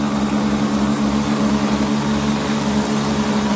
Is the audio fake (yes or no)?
no